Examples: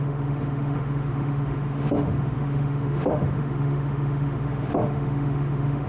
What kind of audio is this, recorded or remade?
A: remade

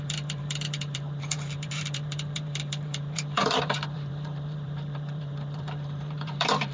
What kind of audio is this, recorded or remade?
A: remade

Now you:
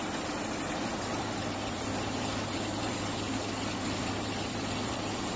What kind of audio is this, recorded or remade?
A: remade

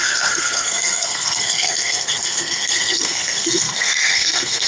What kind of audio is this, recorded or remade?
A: remade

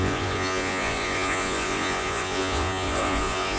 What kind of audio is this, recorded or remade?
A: remade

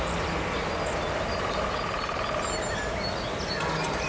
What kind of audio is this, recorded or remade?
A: recorded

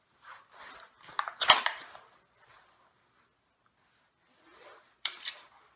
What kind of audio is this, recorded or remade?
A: recorded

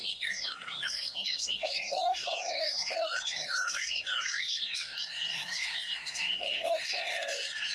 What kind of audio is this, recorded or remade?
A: remade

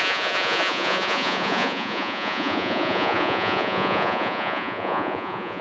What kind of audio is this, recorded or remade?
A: remade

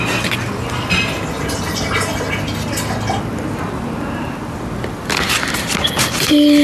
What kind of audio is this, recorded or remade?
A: recorded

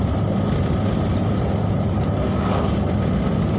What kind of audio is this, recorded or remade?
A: recorded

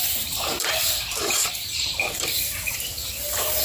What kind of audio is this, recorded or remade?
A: remade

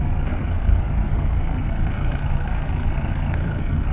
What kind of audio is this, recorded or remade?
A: remade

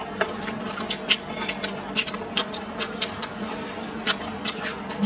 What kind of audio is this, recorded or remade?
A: recorded